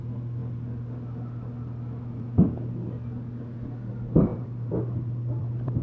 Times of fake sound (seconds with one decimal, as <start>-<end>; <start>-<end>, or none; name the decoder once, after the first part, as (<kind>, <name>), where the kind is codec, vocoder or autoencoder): 4.3-5.8 (vocoder, BigVGAN v2)